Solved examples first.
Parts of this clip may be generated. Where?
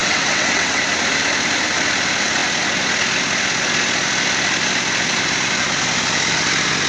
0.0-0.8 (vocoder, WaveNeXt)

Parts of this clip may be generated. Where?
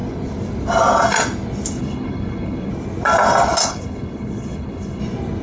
1.8-2.7 (codec, HILCodec); 3.6-5.0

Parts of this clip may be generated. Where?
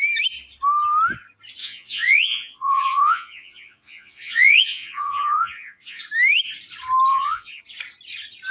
1.6-6.0 (vocoder, Vocos); 7.1-7.6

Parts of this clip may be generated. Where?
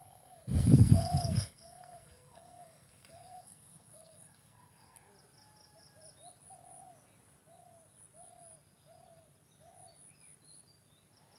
0.0-5.1 (codec, SNAC)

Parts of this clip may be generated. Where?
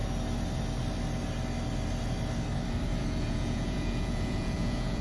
3.0-5.0 (vocoder, Vocos)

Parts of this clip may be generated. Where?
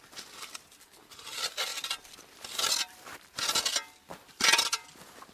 none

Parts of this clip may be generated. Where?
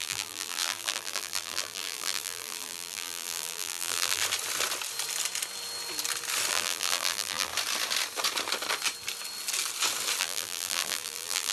0.0-4.2 (vocoder, BigVGAN v2); 6.5-7.5; 10.2-11.5